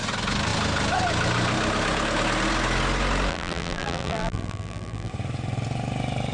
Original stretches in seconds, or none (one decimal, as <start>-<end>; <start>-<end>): 0.0-3.3; 5.1-6.3